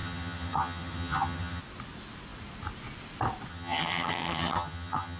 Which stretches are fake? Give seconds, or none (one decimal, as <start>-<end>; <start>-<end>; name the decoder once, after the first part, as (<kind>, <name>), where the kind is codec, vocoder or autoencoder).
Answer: 0.0-1.6 (vocoder, HiFi-GAN); 3.5-5.2